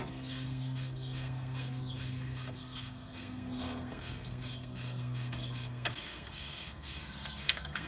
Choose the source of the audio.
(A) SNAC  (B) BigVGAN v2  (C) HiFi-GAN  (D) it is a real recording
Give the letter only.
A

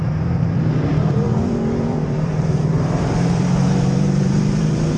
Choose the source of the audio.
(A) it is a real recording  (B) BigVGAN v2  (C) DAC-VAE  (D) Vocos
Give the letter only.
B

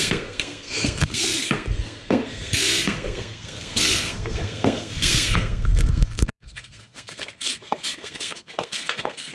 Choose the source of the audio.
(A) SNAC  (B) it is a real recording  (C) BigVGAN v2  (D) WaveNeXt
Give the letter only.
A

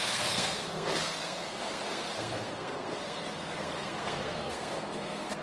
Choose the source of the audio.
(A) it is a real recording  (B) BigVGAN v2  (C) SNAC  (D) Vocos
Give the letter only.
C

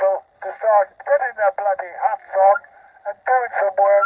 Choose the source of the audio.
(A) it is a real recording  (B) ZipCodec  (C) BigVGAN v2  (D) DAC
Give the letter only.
A